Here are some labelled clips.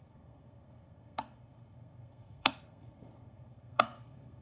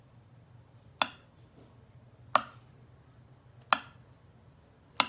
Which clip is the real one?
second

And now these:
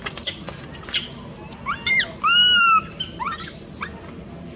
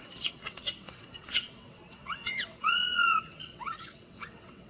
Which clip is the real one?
first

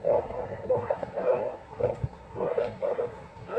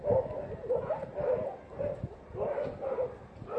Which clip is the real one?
second